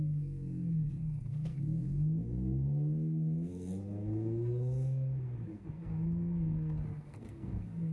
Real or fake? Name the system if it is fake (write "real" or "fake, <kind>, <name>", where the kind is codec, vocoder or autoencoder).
fake, codec, SNAC